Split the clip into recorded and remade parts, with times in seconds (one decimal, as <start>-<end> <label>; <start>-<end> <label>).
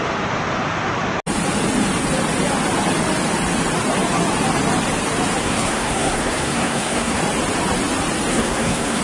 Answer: 0.0-5.4 recorded; 5.4-7.2 remade; 7.2-8.3 recorded; 8.3-9.0 remade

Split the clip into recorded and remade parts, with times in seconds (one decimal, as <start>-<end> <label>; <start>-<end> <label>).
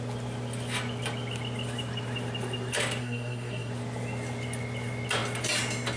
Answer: 0.0-3.0 recorded; 3.0-3.7 remade; 3.7-6.0 recorded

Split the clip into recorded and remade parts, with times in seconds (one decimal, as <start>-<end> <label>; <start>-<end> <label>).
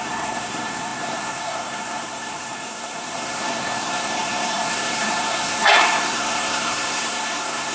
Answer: 0.0-7.7 remade